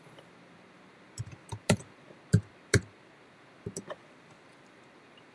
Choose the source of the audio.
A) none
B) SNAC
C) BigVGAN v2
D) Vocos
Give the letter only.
C